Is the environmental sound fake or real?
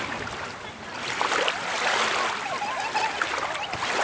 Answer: real